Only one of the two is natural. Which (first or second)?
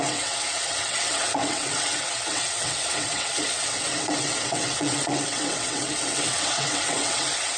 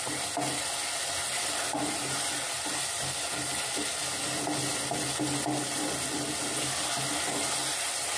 second